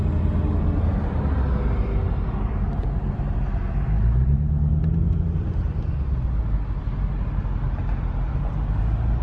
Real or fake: real